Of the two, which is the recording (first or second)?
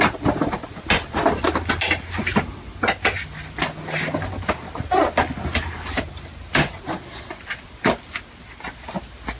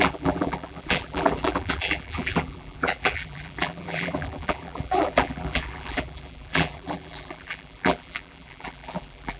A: first